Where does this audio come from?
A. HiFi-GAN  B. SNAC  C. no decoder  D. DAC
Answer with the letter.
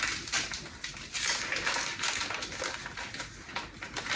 C